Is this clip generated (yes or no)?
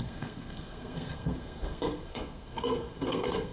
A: yes